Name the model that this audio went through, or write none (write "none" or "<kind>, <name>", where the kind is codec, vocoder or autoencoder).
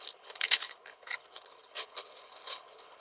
codec, HILCodec